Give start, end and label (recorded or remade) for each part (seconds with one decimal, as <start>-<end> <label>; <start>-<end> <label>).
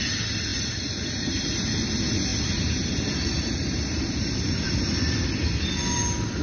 0.0-0.5 recorded; 0.5-1.4 remade; 1.4-2.3 recorded; 2.3-4.8 remade; 4.8-6.4 recorded